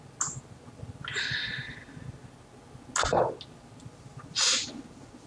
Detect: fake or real real